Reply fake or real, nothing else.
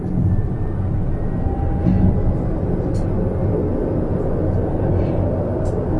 real